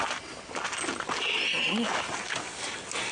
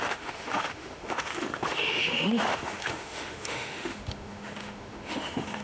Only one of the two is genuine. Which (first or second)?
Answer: first